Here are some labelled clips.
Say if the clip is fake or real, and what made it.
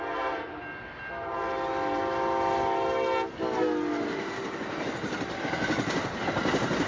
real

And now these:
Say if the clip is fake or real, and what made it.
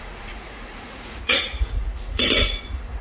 fake, vocoder, Vocos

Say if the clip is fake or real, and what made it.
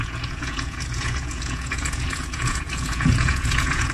fake, vocoder, Vocos